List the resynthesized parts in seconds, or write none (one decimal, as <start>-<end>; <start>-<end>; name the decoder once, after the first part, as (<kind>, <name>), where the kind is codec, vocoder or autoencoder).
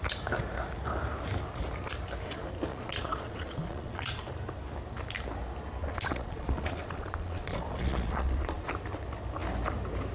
2.7-4.2 (vocoder, Vocos); 5.8-8.7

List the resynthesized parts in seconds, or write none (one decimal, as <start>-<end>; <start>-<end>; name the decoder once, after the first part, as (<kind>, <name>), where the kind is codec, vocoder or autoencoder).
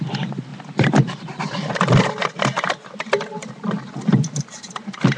0.5-1.9 (vocoder, BigVGAN v2); 3.4-3.9